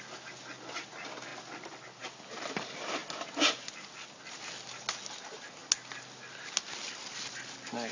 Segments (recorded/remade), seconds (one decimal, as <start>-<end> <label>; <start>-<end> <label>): 0.0-7.9 recorded